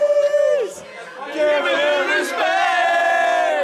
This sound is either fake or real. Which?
real